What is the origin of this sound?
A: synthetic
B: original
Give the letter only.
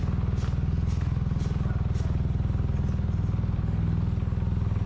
B